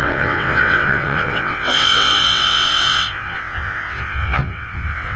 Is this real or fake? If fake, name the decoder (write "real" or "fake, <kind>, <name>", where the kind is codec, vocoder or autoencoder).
fake, vocoder, WaveNeXt